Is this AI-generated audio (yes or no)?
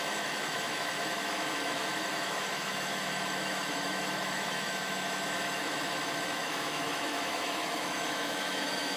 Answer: yes